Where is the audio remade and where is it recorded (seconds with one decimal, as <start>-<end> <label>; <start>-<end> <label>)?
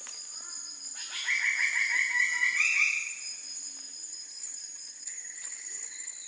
0.0-4.1 recorded; 4.1-6.3 remade